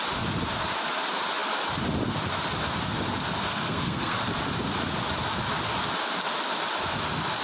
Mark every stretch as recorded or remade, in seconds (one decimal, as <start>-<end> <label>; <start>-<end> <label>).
0.0-3.5 recorded; 3.5-4.3 remade; 4.3-7.4 recorded

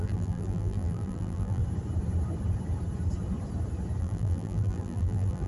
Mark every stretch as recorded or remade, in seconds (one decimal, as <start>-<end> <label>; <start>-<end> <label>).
0.0-1.6 remade; 1.6-4.0 recorded; 4.0-5.5 remade

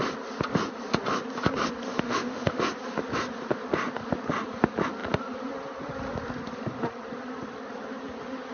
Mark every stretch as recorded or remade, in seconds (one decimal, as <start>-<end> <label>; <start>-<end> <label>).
0.0-1.9 recorded; 1.9-2.6 remade; 2.6-8.5 recorded

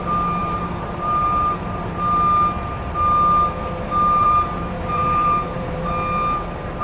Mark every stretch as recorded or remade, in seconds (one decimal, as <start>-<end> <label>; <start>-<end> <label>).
0.0-0.4 recorded; 0.4-1.9 remade; 1.9-4.2 recorded; 4.2-5.9 remade; 5.9-6.8 recorded

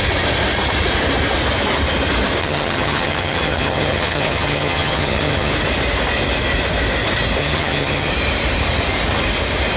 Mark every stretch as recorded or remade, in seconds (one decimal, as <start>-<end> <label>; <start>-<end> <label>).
0.0-2.4 recorded; 2.4-5.5 remade; 5.5-7.4 recorded; 7.4-8.1 remade; 8.1-9.8 recorded